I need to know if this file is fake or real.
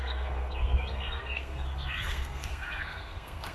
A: fake